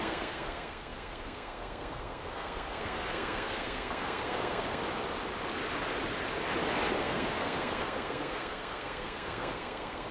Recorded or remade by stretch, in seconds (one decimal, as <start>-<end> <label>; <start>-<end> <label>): 0.0-4.8 remade; 4.8-7.0 recorded; 7.0-10.1 remade